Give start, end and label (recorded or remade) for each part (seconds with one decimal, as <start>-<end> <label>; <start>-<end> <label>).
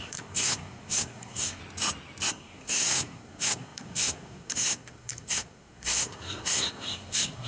0.0-1.6 remade; 1.6-2.3 recorded; 2.3-7.5 remade